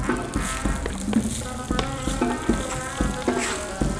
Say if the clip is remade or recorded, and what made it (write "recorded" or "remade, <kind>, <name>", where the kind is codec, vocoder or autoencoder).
recorded